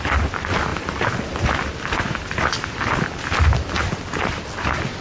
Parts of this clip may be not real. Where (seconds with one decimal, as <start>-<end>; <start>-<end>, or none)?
0.7-3.7